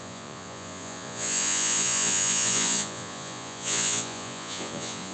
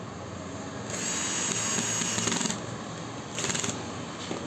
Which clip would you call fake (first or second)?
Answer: first